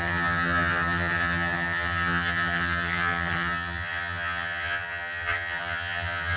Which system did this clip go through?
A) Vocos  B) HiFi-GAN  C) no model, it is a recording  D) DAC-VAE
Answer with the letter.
B